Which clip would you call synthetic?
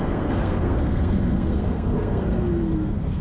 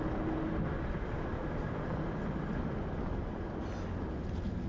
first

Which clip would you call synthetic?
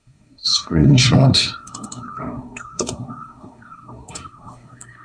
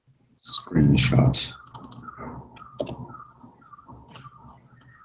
first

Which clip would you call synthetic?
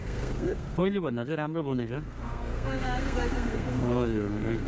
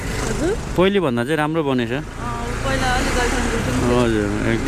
first